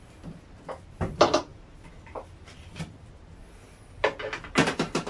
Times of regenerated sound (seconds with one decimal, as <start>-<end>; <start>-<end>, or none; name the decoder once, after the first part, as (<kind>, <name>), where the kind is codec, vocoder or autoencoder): 1.5-2.8 (vocoder, BigVGAN v2)